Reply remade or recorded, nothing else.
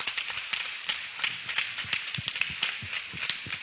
remade